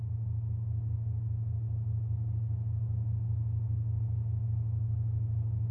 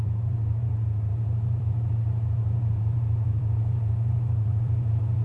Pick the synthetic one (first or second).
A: second